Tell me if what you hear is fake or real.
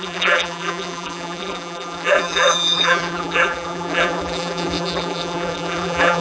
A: fake